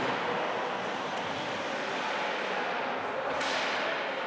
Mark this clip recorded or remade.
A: recorded